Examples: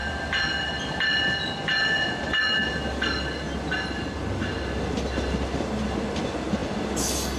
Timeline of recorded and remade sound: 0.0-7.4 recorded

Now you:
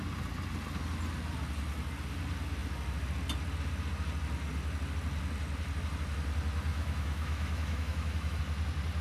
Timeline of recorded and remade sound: 0.0-6.7 recorded; 6.7-8.4 remade; 8.4-9.0 recorded

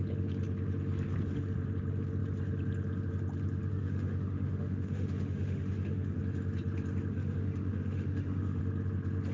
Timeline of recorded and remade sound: 0.0-3.7 recorded; 3.7-6.2 remade; 6.2-7.1 recorded; 7.1-8.6 remade; 8.6-9.3 recorded

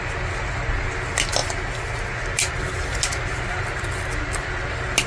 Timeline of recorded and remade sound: 0.0-5.1 recorded

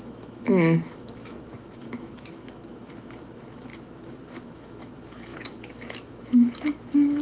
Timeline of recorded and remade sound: 0.0-7.2 remade

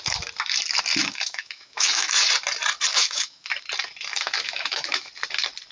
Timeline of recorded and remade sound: 0.0-1.0 recorded; 1.0-2.3 remade; 2.3-2.9 recorded; 2.9-3.5 remade; 3.5-4.1 recorded; 4.1-5.1 remade; 5.1-5.7 recorded

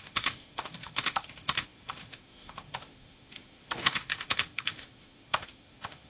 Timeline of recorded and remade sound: 0.0-6.1 remade